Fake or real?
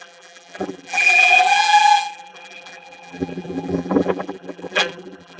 fake